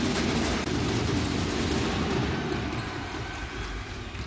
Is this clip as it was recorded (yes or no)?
yes